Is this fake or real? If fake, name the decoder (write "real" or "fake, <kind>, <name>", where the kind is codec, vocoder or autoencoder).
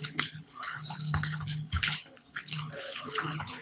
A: fake, codec, HILCodec